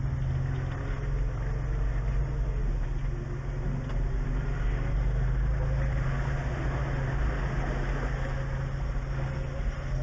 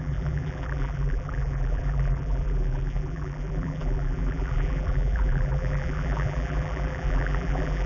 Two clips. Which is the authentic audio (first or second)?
first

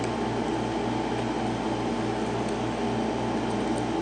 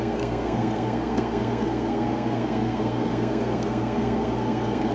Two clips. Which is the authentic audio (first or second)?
first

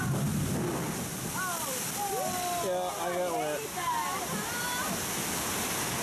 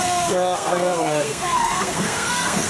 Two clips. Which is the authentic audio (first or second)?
first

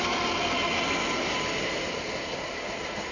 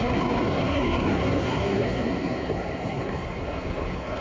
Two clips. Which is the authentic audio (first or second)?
first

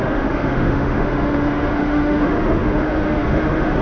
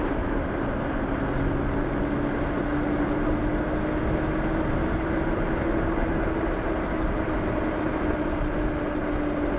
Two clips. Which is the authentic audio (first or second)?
second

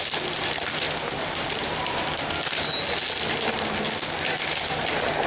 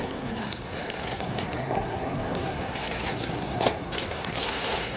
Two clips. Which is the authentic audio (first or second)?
first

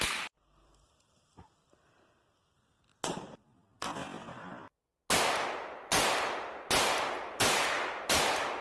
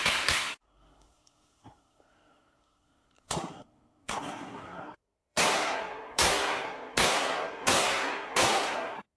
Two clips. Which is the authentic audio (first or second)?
first